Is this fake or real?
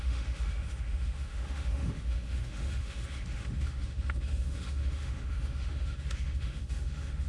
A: fake